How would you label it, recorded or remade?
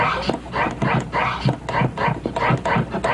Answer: recorded